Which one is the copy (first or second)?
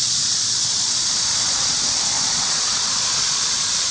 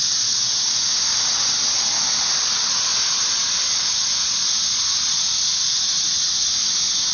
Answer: first